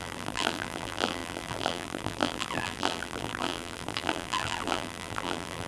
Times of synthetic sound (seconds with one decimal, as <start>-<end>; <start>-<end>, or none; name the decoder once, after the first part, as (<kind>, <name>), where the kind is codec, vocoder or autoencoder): 0.0-5.7 (vocoder, BigVGAN v2)